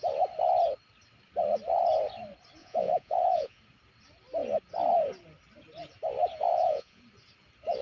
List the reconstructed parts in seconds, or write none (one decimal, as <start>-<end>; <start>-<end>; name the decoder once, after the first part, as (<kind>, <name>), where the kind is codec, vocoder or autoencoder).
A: 2.6-3.6 (vocoder, Vocos); 6.5-7.0